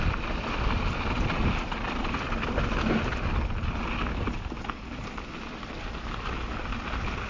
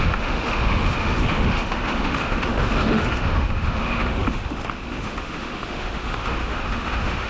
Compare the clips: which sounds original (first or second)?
first